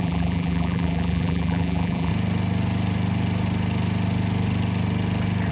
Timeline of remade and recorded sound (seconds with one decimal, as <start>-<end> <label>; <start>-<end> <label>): 0.0-2.1 remade; 2.1-5.5 recorded

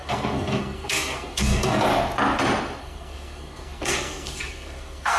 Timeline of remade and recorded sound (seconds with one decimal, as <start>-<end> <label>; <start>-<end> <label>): 0.0-1.9 remade; 1.9-2.8 recorded; 2.8-5.2 remade